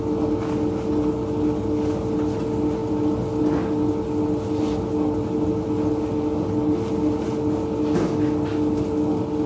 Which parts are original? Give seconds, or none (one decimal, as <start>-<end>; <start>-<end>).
0.0-9.5